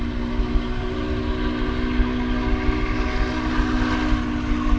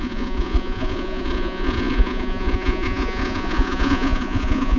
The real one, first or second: first